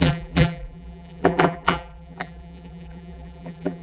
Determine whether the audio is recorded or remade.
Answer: remade